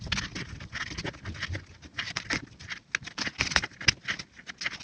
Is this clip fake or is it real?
real